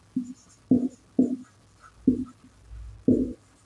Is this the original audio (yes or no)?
yes